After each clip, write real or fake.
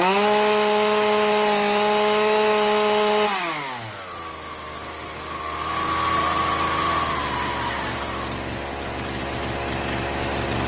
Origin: real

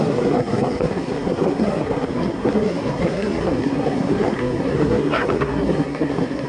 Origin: fake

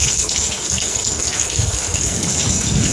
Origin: fake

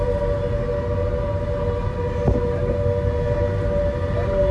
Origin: real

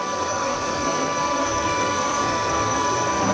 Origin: fake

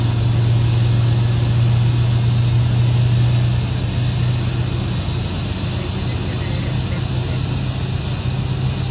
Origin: real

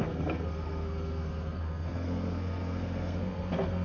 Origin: fake